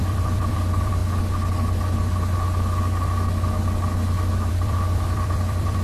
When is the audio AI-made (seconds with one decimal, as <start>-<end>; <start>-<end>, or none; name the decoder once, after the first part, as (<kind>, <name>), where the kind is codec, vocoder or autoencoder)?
0.0-1.0 (vocoder, BigVGAN v2); 4.5-5.8